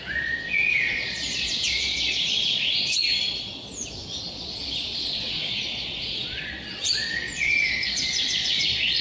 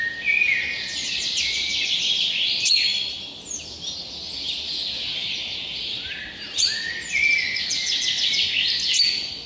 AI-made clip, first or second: first